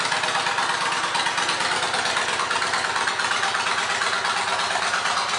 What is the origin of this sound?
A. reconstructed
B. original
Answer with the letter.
B